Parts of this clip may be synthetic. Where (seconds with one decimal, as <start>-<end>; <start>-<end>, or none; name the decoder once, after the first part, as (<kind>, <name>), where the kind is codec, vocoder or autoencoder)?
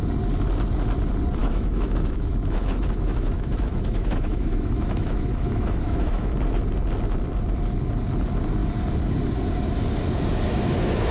1.4-6.3 (autoencoder, DAC-VAE)